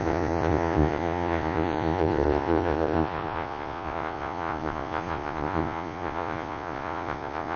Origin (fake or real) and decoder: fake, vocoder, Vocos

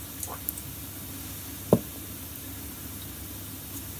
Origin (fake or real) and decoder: real